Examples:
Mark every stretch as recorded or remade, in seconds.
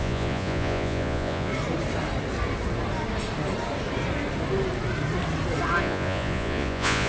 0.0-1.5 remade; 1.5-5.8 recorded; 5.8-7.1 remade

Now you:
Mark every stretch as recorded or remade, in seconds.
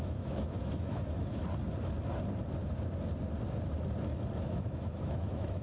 0.0-1.4 remade; 1.4-4.4 recorded; 4.4-5.6 remade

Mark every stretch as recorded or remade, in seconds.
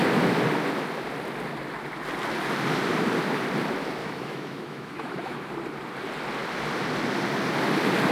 0.0-4.0 recorded; 4.0-5.5 remade; 5.5-8.1 recorded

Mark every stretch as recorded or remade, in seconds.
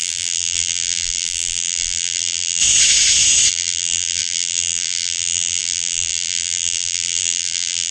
0.0-2.6 remade; 2.6-3.5 recorded; 3.5-7.9 remade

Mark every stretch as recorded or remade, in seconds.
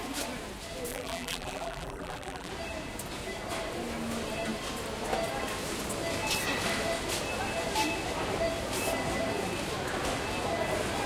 0.0-0.9 recorded; 0.9-2.5 remade; 2.5-11.1 recorded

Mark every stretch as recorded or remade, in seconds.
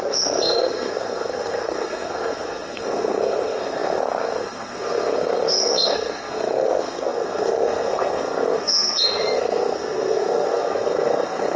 0.0-11.6 remade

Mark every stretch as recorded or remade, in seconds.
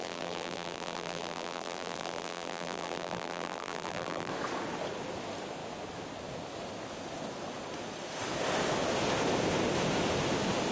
0.0-4.3 remade; 4.3-10.7 recorded